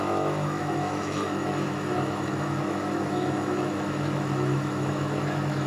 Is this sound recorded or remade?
remade